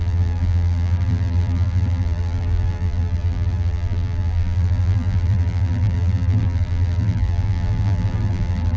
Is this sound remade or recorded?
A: remade